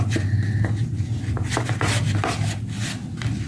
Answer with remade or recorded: recorded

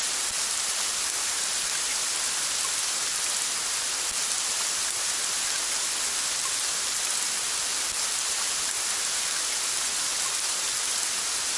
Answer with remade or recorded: recorded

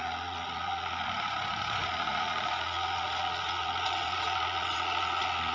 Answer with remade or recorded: remade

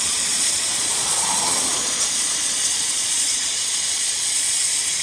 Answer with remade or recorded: remade